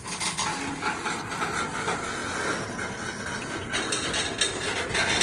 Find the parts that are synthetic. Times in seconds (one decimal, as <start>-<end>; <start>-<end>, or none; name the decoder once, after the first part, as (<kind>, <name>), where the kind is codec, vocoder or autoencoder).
none